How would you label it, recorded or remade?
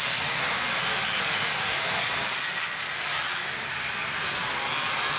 recorded